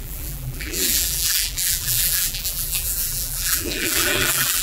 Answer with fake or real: fake